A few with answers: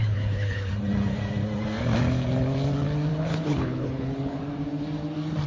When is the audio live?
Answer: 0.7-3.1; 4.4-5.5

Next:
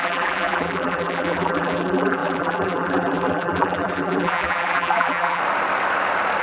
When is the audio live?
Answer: 5.4-6.4

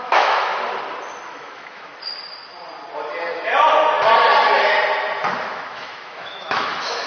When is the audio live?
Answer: 0.5-1.3; 1.9-5.4